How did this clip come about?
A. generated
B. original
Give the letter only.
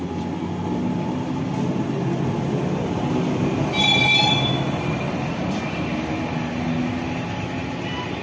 B